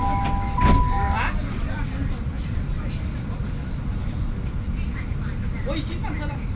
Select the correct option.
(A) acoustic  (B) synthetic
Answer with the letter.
A